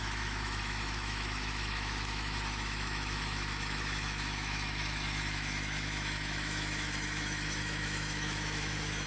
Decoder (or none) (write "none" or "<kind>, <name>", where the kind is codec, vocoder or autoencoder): autoencoder, DAC-VAE